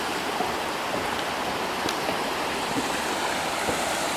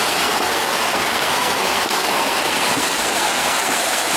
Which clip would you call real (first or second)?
first